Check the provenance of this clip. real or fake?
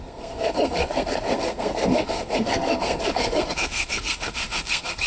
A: fake